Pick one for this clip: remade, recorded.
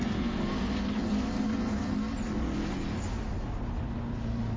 recorded